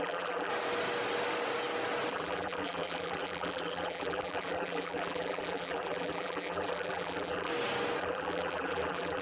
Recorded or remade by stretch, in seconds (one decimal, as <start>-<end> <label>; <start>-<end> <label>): 0.0-0.5 remade; 0.5-2.1 recorded; 2.1-7.5 remade; 7.5-8.0 recorded; 8.0-9.2 remade